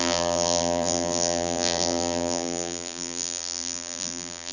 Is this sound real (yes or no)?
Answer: no